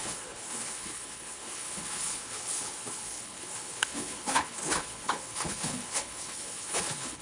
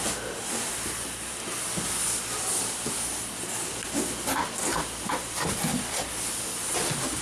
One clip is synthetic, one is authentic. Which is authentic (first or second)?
second